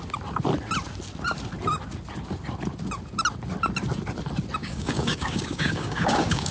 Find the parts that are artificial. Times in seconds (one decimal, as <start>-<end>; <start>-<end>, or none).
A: 4.6-6.5